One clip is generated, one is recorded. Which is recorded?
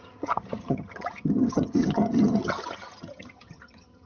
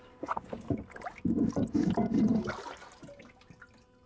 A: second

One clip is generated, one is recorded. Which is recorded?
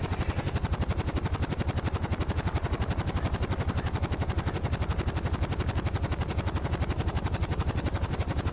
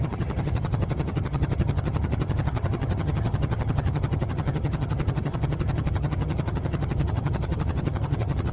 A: first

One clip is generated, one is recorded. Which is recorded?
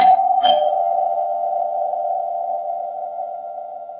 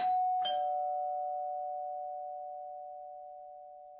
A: second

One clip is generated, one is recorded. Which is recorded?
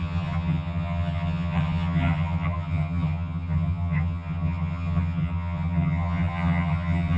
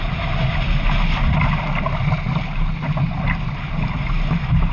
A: second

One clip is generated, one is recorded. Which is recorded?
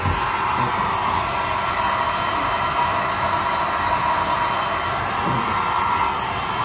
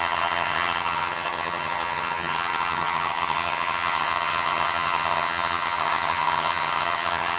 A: first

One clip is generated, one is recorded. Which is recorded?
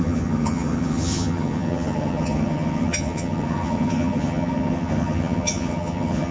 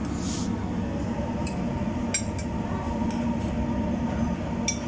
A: second